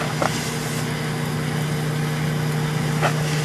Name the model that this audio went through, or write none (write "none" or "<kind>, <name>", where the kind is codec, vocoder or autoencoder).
none